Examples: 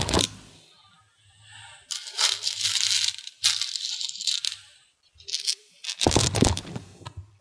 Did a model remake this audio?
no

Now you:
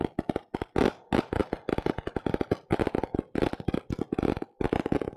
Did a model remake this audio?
no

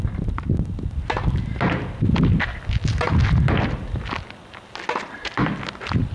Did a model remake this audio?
no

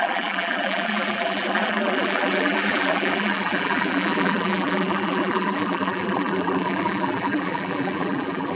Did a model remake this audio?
yes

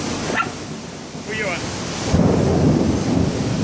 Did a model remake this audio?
no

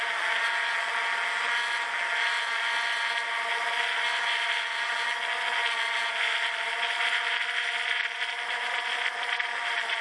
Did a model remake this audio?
no